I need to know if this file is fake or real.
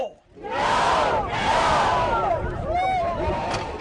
fake